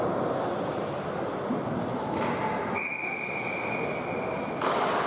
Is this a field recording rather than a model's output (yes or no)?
yes